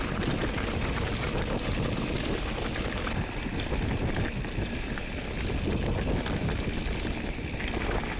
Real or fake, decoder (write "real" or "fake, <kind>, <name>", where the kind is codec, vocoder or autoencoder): real